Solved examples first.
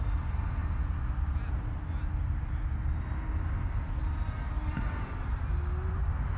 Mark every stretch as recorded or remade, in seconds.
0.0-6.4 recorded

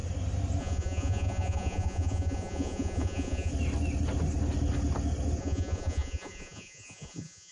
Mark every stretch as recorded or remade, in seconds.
0.0-0.6 recorded; 0.6-3.5 remade; 3.5-5.4 recorded; 5.4-7.5 remade

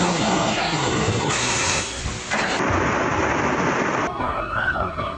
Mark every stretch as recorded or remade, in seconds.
0.0-2.0 remade; 2.0-4.2 recorded; 4.2-5.2 remade

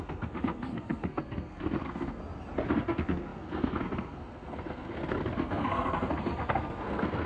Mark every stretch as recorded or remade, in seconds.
0.0-2.2 remade; 2.2-2.7 recorded; 2.7-7.3 remade

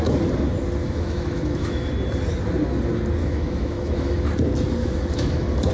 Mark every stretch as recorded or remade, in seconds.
0.0-0.8 recorded; 0.8-1.9 remade; 1.9-3.2 recorded; 3.2-4.3 remade; 4.3-4.8 recorded; 4.8-5.7 remade

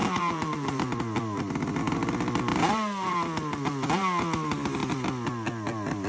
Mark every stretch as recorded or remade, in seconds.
0.0-1.0 remade; 1.0-6.1 recorded

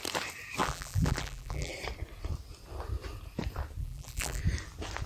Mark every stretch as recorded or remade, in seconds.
0.0-0.6 recorded; 0.6-1.7 remade; 1.7-3.8 recorded; 3.8-4.4 remade; 4.4-5.1 recorded